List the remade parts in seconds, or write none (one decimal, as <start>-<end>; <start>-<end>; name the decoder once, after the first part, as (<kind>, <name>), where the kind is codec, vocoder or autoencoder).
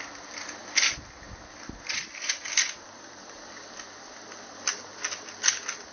none